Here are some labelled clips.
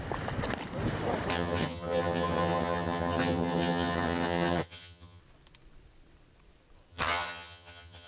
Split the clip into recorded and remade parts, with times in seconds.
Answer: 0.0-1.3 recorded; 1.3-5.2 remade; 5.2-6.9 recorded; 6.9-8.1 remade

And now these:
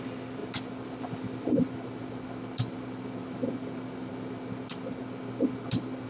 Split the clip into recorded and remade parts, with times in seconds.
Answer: 0.0-6.1 recorded

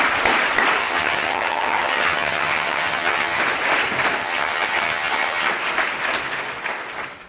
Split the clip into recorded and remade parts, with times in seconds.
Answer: 0.0-0.8 recorded; 0.8-3.4 remade; 3.4-4.2 recorded; 4.2-5.5 remade; 5.5-7.3 recorded

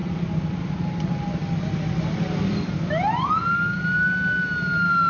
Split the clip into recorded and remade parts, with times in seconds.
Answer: 0.0-5.1 recorded

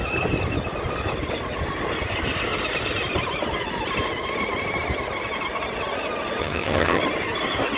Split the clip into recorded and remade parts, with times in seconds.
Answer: 0.0-6.4 recorded; 6.4-7.0 remade; 7.0-7.8 recorded

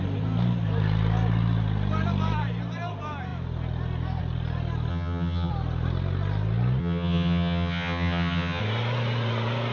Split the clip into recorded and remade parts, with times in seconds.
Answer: 0.0-4.9 recorded; 4.9-5.5 remade; 5.5-6.8 recorded; 6.8-8.6 remade; 8.6-9.7 recorded

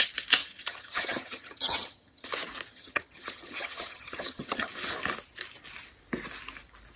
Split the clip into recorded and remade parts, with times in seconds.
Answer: 0.0-0.4 recorded; 0.4-2.3 remade; 2.3-2.7 recorded; 2.7-4.7 remade; 4.7-7.0 recorded